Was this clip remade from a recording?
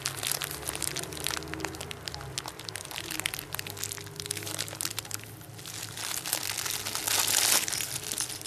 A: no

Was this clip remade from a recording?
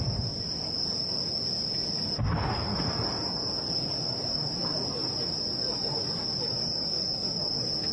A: no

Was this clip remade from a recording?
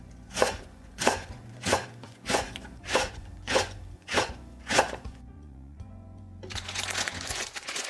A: yes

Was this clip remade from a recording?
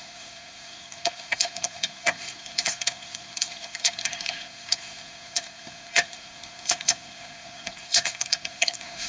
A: yes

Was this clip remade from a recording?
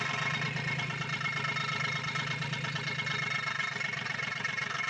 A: no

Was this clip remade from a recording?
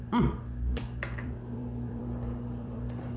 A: yes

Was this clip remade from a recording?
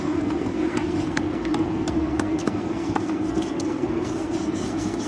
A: yes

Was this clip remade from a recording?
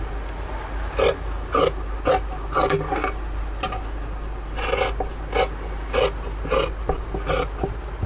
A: no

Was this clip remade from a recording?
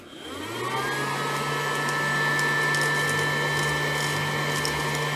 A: no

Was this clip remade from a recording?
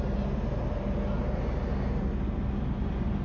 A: no